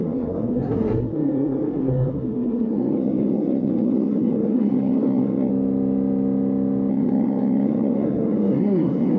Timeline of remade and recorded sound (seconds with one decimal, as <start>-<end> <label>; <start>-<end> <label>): 0.0-5.5 remade; 5.5-6.9 recorded; 6.9-9.2 remade